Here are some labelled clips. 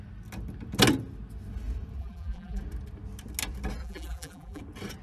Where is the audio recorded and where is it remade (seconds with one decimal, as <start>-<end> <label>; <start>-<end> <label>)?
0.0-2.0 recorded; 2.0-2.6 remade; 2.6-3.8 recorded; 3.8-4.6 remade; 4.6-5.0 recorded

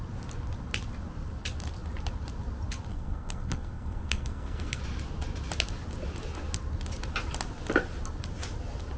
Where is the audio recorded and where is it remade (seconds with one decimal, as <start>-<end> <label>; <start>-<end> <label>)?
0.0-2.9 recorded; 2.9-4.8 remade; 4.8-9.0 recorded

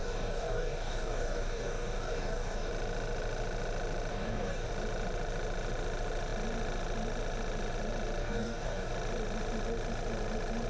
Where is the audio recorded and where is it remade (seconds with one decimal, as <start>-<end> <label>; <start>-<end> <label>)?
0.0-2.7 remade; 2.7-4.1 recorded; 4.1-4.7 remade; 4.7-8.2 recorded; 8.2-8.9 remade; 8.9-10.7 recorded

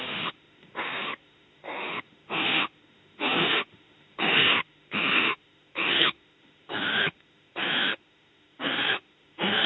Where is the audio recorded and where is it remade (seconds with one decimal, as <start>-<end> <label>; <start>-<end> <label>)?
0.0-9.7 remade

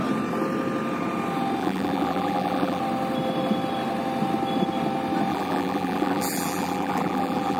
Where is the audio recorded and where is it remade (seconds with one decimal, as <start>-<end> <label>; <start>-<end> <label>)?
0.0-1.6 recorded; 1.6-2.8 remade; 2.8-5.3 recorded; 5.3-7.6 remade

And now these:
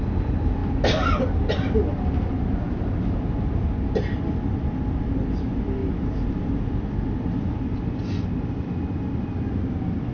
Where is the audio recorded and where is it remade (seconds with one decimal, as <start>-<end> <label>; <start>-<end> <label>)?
0.0-10.1 recorded